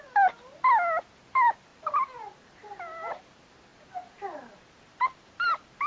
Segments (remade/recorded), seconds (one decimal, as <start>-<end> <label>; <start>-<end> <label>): 0.0-1.7 recorded; 1.7-3.2 remade; 3.2-3.7 recorded; 3.7-5.9 remade